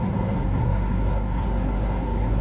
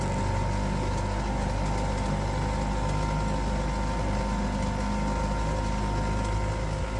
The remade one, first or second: first